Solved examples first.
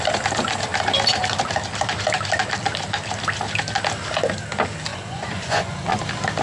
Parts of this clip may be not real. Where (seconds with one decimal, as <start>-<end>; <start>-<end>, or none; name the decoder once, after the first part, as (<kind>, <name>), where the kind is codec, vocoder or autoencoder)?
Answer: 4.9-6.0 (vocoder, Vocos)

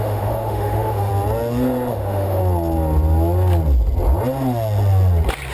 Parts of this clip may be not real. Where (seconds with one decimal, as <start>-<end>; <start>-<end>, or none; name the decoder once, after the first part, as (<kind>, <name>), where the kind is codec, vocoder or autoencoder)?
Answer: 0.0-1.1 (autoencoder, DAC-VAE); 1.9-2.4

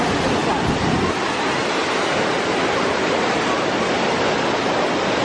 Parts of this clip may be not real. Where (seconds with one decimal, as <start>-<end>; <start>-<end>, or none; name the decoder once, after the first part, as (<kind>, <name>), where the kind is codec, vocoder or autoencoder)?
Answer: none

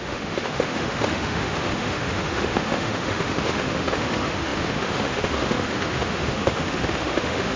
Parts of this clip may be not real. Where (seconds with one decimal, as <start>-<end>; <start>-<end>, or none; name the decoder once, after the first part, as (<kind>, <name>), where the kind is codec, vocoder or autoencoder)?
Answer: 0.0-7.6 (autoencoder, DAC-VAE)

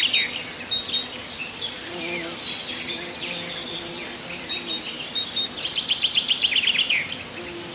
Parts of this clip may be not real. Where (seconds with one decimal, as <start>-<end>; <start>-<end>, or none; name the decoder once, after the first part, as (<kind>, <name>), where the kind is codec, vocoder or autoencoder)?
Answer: none

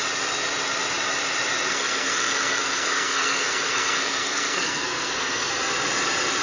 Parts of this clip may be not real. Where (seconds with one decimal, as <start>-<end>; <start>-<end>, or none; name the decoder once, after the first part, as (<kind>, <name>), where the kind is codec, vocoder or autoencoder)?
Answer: 1.7-5.5 (codec, SNAC)